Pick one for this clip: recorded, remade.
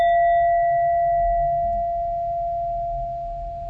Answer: recorded